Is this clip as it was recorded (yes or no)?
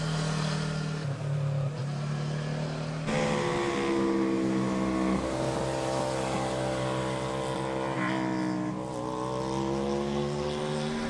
yes